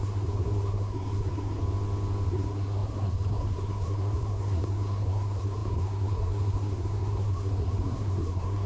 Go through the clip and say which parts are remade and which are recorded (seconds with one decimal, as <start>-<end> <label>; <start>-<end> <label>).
0.0-1.6 remade; 1.6-2.3 recorded; 2.3-8.7 remade